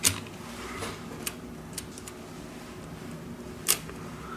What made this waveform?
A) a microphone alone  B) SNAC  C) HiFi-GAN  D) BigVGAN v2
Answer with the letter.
A